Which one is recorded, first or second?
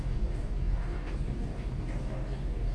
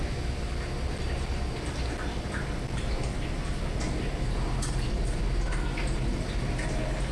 second